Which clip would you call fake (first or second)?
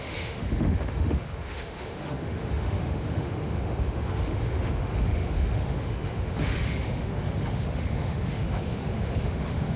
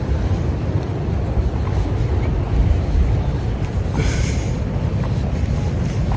first